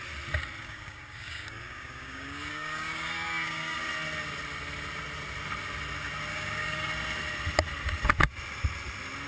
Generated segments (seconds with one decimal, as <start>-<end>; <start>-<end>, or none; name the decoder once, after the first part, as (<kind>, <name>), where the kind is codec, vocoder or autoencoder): 0.6-3.9 (codec, DAC); 6.3-6.9